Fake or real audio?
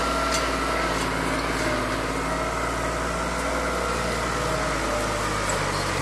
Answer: real